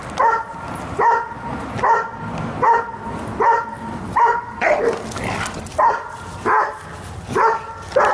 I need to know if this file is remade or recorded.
recorded